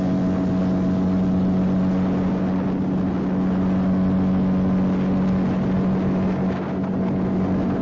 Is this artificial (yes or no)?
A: no